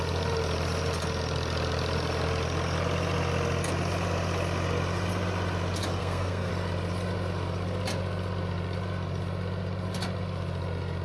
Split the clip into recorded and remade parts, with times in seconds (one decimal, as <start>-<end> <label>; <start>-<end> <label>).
0.0-6.0 recorded; 6.0-6.5 remade; 6.5-11.0 recorded